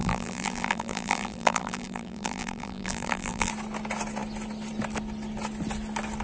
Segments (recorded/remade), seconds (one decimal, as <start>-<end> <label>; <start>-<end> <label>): 0.0-3.5 remade; 3.5-6.2 recorded